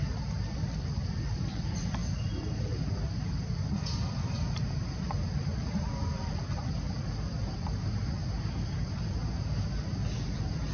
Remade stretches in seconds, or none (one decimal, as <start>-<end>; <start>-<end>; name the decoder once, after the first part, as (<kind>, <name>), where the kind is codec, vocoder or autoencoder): 0.0-2.0 (vocoder, BigVGAN v2); 2.6-8.2